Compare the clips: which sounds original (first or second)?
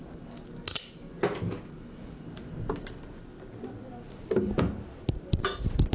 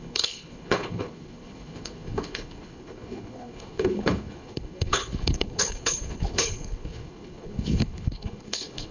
first